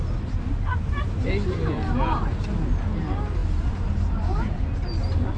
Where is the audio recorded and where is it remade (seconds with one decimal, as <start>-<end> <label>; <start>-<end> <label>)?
0.0-5.4 recorded